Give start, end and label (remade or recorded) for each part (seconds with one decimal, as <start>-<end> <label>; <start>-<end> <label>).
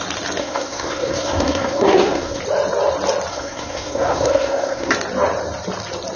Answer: 0.0-0.4 recorded; 0.4-2.4 remade; 2.4-3.3 recorded; 3.3-4.9 remade; 4.9-6.2 recorded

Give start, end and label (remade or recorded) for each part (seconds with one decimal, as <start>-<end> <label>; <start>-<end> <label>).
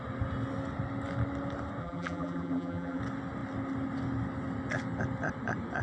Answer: 0.0-1.8 recorded; 1.8-3.0 remade; 3.0-5.8 recorded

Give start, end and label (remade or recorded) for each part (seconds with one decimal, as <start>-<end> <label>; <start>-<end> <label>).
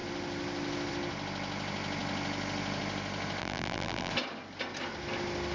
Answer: 0.0-3.4 recorded; 3.4-4.1 remade; 4.1-5.5 recorded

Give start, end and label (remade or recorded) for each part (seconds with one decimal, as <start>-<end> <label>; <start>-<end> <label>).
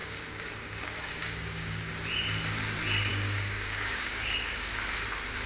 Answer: 0.0-1.9 remade; 1.9-3.1 recorded; 3.1-4.7 remade; 4.7-5.5 recorded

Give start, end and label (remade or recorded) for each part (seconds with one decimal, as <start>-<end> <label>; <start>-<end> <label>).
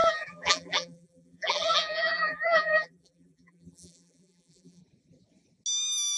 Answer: 0.0-4.8 remade; 4.8-6.2 recorded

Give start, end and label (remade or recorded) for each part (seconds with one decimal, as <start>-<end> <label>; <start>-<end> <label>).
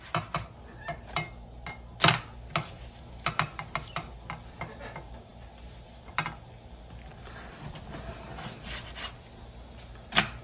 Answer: 0.0-10.4 recorded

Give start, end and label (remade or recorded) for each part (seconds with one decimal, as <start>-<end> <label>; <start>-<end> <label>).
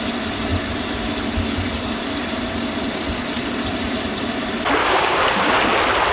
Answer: 0.0-4.8 recorded; 4.8-5.6 remade; 5.6-6.1 recorded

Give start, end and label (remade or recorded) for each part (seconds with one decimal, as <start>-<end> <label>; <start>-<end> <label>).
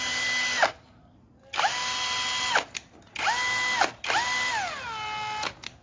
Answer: 0.0-5.8 recorded